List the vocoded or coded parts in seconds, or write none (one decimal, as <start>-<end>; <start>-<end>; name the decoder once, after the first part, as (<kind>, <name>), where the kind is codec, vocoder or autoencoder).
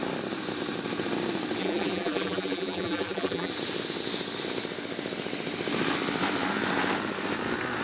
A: 1.6-3.5 (vocoder, BigVGAN v2)